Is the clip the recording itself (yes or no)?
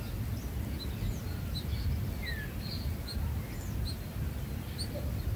yes